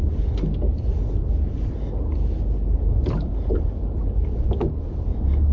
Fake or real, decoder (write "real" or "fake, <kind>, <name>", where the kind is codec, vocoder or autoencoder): real